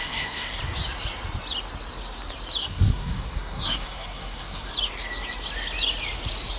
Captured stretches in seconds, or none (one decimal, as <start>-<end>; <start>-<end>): 0.6-2.6; 4.7-6.6